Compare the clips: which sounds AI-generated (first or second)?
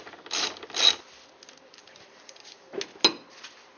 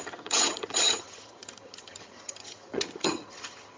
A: second